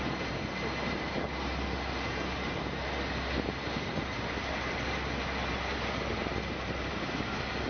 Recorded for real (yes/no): yes